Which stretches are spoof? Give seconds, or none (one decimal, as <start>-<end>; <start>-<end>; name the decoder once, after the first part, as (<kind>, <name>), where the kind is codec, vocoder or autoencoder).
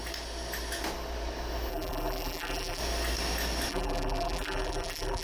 1.7-2.8 (vocoder, BigVGAN v2); 3.7-5.2